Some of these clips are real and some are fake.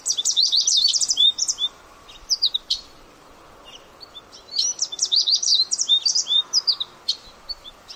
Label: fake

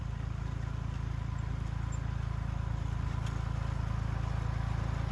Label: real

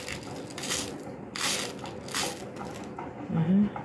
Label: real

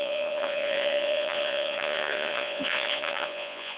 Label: fake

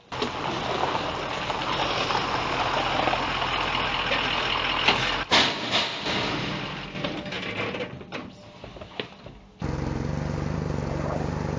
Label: real